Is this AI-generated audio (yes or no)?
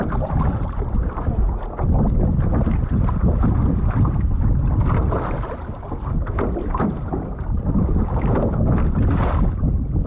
no